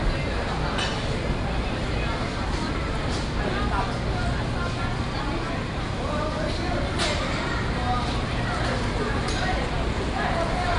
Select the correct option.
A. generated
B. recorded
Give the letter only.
B